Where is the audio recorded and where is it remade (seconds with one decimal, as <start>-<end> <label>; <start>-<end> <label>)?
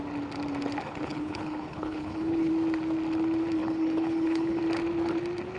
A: 0.0-0.8 recorded; 0.8-2.5 remade; 2.5-3.6 recorded; 3.6-4.6 remade; 4.6-5.6 recorded